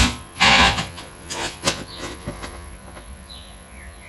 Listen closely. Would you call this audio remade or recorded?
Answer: remade